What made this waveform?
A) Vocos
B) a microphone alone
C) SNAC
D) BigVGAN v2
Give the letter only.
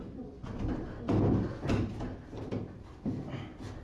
B